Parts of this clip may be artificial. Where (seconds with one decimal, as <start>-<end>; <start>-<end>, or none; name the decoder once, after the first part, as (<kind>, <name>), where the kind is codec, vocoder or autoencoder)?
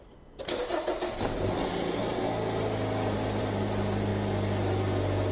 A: none